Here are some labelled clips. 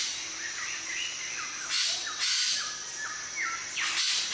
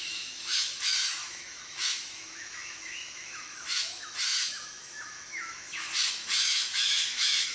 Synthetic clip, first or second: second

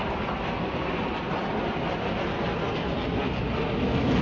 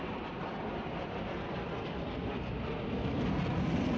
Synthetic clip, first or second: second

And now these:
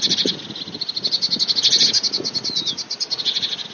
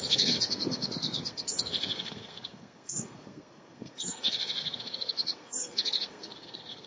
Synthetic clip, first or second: second